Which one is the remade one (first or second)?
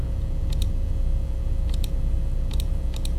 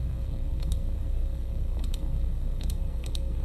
second